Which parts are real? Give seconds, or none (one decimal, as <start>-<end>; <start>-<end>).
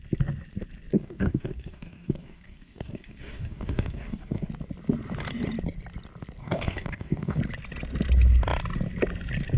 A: 0.0-0.9; 4.5-6.4; 7.4-9.6